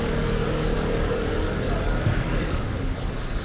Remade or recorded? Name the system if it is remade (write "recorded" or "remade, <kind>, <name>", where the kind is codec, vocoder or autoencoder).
remade, codec, DAC